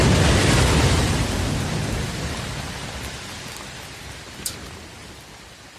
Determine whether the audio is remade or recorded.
recorded